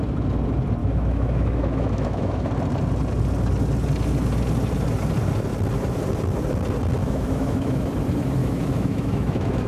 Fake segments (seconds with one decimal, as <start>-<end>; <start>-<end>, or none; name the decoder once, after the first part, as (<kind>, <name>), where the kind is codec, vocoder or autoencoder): 0.8-2.5 (autoencoder, DAC-VAE); 7.0-7.9; 8.4-9.7